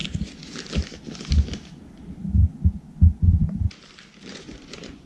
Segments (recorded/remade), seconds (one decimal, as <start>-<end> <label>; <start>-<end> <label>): 0.0-4.3 recorded; 4.3-5.1 remade